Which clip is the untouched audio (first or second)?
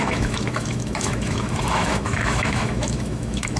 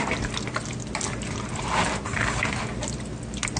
second